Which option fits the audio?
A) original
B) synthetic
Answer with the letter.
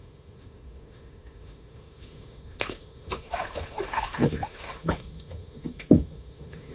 B